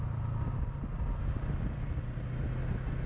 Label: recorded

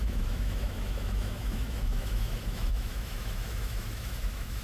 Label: remade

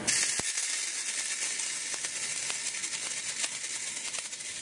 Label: recorded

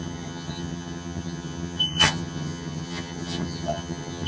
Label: remade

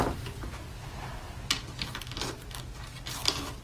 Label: recorded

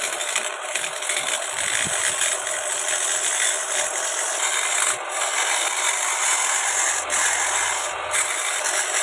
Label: recorded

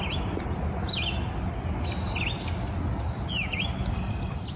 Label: recorded